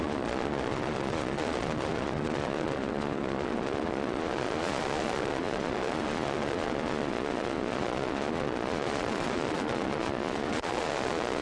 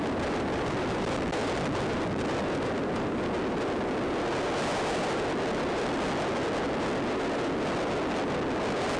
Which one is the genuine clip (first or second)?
second